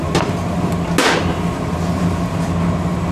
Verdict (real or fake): real